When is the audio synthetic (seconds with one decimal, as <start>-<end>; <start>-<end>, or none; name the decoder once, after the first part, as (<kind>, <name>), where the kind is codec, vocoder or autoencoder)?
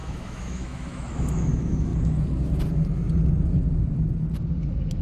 0.0-1.9 (autoencoder, DAC-VAE)